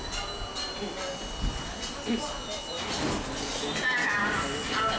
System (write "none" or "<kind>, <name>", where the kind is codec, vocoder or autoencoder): none